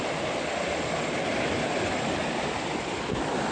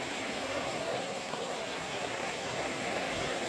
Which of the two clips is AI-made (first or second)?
second